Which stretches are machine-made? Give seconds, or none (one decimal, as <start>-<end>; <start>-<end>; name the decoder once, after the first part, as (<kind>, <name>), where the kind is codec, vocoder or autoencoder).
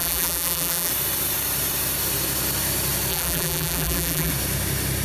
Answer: 0.0-0.9 (vocoder, BigVGAN v2); 3.1-4.3